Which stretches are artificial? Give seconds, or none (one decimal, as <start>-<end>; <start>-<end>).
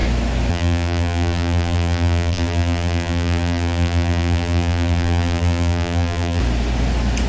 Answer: 0.5-6.4